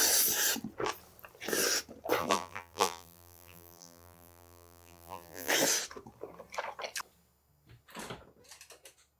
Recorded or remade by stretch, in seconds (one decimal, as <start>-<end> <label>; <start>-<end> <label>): 0.0-2.2 recorded; 2.2-5.5 remade; 5.5-9.2 recorded

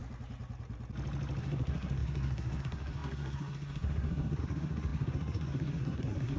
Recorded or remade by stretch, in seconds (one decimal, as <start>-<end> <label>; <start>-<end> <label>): 0.0-1.4 recorded; 1.4-6.4 remade

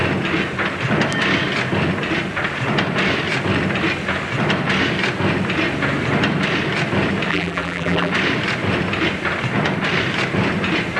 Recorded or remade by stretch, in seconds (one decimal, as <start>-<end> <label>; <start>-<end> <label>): 0.0-7.3 recorded; 7.3-8.1 remade; 8.1-11.0 recorded